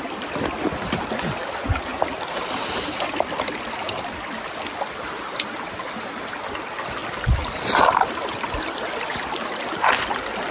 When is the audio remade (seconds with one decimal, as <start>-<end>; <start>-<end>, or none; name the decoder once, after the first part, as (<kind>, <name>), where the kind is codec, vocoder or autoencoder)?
none